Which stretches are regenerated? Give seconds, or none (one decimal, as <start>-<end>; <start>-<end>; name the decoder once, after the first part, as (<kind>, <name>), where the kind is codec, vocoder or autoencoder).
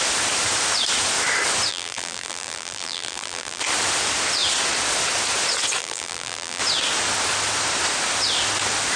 1.7-3.6 (vocoder, BigVGAN v2); 5.8-6.6